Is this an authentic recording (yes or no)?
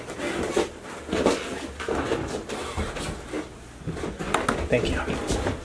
yes